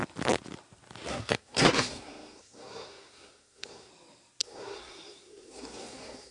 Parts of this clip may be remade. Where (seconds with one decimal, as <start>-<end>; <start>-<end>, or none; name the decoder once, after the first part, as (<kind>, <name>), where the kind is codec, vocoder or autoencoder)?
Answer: 1.1-3.9 (codec, SNAC); 4.4-6.3

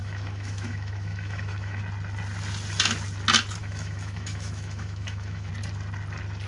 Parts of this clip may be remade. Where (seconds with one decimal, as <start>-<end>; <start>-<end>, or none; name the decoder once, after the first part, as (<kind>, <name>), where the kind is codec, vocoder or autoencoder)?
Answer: 0.0-1.8 (autoencoder, DAC-VAE); 3.6-5.5

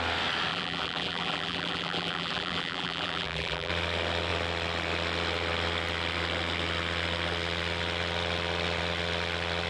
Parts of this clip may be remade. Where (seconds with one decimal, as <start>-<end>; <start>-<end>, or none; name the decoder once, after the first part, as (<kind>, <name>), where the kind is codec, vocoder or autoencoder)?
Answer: 0.5-3.7 (vocoder, BigVGAN v2)

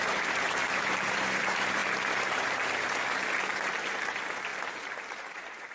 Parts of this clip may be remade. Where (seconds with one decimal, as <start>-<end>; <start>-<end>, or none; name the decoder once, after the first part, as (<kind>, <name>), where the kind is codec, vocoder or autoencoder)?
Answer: 0.0-1.8 (vocoder, BigVGAN v2); 3.7-4.5; 5.3-5.7

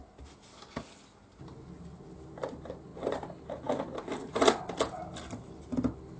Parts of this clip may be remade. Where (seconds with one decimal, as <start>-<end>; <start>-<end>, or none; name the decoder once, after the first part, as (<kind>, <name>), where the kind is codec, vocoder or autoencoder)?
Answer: none

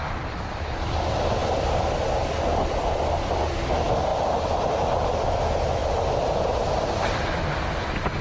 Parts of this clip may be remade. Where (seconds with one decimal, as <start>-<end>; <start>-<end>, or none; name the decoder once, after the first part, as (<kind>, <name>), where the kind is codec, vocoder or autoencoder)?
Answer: 4.1-4.7 (vocoder, BigVGAN v2)

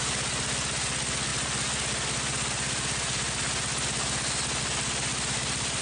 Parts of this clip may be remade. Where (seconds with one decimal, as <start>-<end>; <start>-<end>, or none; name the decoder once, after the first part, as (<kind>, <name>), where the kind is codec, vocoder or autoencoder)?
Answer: none